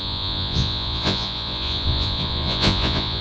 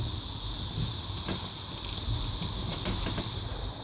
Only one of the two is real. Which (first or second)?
second